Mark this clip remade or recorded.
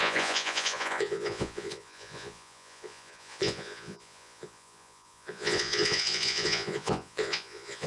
remade